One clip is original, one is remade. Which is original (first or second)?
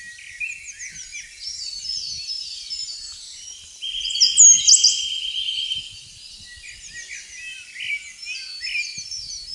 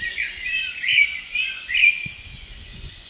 first